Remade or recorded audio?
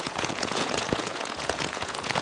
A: remade